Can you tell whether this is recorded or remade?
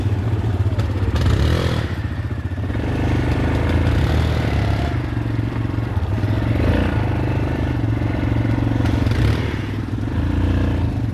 recorded